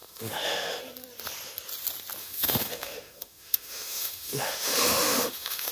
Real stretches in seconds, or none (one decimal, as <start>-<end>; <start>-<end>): 0.8-2.2